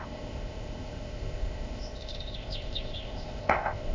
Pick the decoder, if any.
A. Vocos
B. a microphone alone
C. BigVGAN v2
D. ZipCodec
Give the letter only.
D